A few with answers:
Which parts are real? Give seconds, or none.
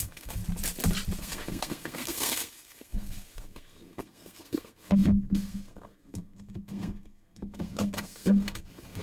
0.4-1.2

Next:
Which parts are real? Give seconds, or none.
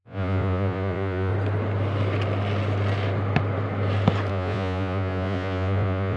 1.3-4.3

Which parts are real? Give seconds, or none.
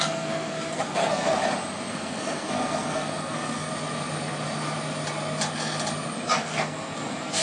1.4-1.9; 3.7-6.4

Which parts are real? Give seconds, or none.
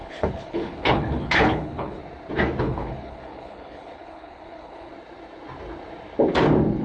2.0-2.6; 4.9-6.8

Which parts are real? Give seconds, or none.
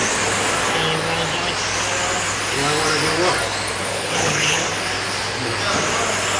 0.0-3.8; 4.6-6.4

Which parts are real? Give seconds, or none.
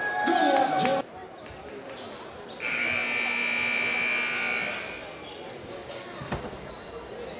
0.0-5.6; 6.7-7.4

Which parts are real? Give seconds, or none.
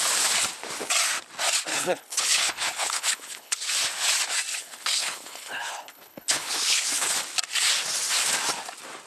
0.0-1.7; 3.7-4.5; 7.1-9.1